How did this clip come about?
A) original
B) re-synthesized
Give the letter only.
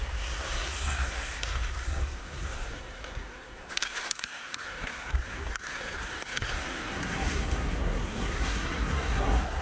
B